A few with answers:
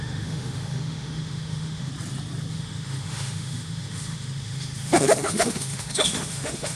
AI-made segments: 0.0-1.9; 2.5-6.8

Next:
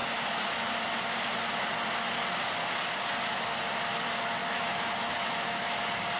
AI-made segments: 4.4-5.8

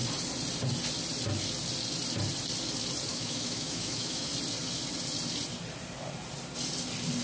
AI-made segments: 3.1-4.3